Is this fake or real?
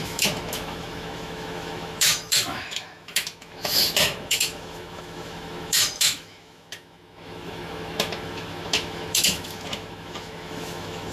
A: fake